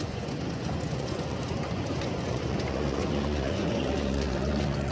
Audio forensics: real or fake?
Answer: fake